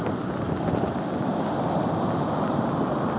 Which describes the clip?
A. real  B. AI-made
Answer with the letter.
A